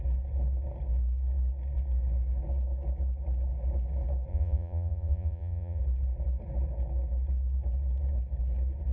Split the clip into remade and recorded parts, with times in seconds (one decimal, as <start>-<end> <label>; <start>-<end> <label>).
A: 0.0-4.3 recorded; 4.3-5.8 remade; 5.8-8.9 recorded

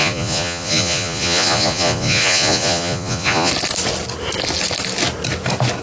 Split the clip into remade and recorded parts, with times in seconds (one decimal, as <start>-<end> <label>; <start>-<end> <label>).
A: 0.0-3.5 remade; 3.5-5.8 recorded

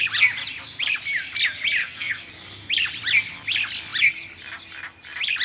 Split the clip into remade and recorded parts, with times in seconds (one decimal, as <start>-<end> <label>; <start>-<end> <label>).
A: 0.0-1.8 recorded; 1.8-2.3 remade; 2.3-5.4 recorded

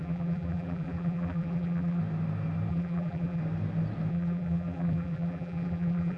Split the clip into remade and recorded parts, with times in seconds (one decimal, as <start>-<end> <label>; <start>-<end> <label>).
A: 0.0-2.0 remade; 2.0-2.7 recorded; 2.7-3.4 remade; 3.4-4.1 recorded; 4.1-6.2 remade